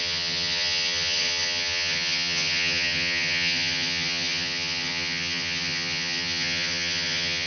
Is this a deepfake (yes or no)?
yes